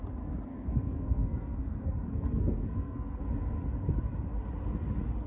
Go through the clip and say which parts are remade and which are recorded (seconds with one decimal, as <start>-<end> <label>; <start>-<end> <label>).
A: 0.0-0.5 recorded; 0.5-3.2 remade; 3.2-5.3 recorded